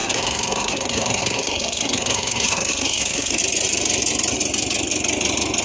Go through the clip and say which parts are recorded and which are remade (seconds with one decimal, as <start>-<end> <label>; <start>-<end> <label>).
0.0-3.4 remade; 3.4-5.6 recorded